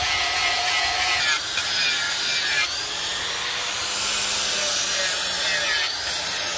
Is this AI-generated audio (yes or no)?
no